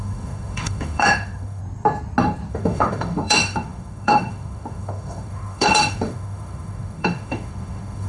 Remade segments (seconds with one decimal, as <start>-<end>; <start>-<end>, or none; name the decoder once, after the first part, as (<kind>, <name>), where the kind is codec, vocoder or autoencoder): 0.0-1.6 (autoencoder, DAC-VAE); 2.5-8.1